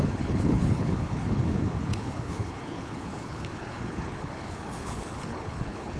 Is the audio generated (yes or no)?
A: yes